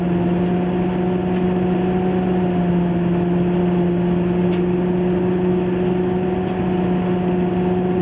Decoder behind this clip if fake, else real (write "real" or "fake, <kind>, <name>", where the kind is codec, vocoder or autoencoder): real